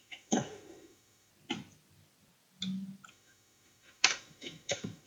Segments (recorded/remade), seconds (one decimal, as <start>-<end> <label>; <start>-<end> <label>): 0.0-1.3 remade; 1.3-3.1 recorded; 3.1-5.1 remade